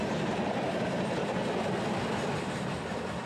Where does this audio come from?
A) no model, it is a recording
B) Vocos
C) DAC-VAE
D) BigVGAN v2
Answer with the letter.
A